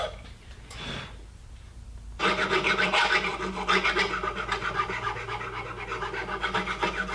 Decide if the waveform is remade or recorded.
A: recorded